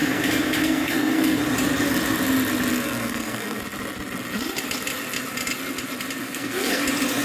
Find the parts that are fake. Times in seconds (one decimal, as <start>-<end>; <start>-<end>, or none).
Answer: 0.0-1.4; 2.7-3.6; 6.2-6.8